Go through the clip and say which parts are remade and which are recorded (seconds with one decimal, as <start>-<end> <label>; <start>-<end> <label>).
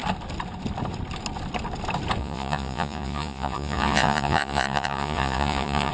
0.0-2.2 recorded; 2.2-5.9 remade